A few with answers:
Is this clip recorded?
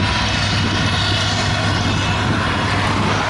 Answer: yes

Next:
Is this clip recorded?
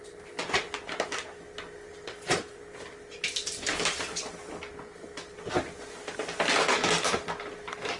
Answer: yes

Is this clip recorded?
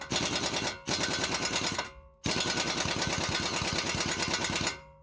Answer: yes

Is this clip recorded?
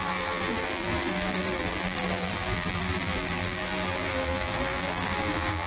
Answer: no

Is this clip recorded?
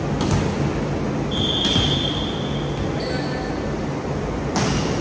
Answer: yes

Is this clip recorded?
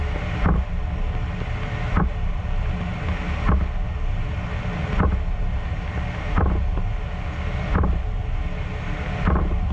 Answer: yes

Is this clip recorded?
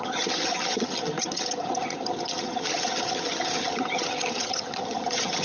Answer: no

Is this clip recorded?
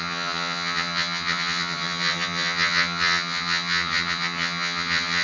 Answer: no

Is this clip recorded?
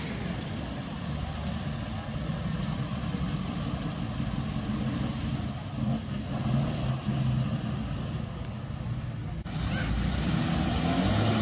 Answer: yes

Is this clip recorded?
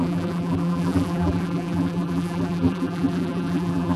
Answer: no